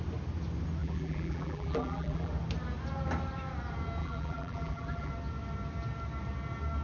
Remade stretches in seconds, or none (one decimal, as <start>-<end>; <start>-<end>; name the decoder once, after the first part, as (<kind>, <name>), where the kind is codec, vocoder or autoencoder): 0.8-2.3 (vocoder, BigVGAN v2); 4.0-5.1